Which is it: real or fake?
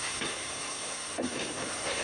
fake